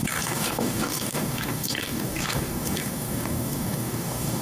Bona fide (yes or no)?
no